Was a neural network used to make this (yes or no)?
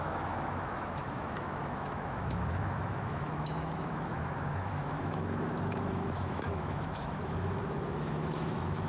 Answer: yes